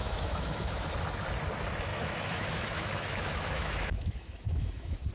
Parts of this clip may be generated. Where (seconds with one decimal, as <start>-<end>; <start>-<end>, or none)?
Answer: 0.0-0.8; 1.9-5.1